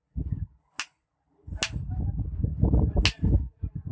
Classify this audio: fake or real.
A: real